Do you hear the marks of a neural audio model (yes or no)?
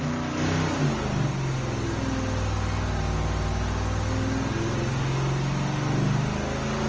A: no